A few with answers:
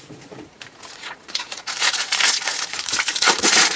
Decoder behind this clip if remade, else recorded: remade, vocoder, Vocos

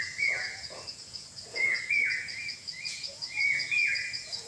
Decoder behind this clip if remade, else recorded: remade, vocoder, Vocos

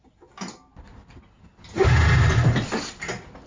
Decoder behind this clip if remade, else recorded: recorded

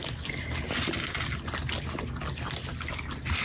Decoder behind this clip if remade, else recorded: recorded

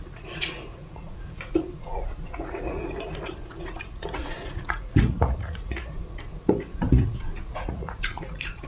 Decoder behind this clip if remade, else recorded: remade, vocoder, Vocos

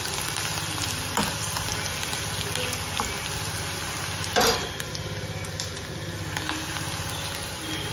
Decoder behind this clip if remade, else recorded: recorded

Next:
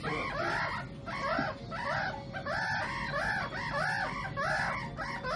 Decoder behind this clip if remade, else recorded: recorded